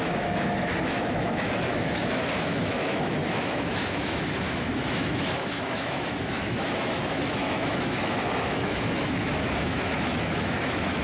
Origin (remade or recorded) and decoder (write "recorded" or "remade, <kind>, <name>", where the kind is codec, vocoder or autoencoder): remade, autoencoder, DAC-VAE